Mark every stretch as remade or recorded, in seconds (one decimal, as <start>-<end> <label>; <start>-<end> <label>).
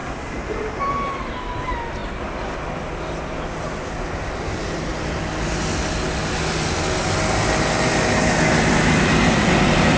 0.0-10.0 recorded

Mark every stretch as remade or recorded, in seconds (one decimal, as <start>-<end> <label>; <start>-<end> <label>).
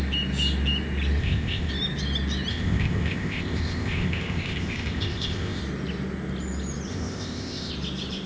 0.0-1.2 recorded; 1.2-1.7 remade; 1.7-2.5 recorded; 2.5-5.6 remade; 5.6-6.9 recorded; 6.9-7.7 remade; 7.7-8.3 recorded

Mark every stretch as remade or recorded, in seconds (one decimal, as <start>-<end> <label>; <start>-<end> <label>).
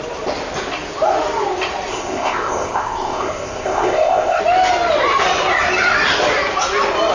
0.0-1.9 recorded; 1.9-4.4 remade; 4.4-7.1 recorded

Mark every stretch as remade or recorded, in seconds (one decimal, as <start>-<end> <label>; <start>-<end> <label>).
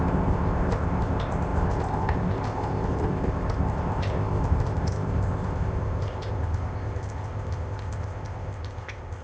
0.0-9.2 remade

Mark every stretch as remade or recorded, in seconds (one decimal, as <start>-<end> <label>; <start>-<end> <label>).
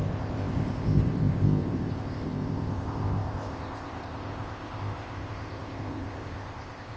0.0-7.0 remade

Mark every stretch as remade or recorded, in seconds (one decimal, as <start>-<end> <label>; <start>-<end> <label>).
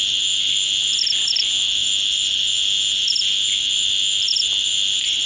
0.0-5.3 recorded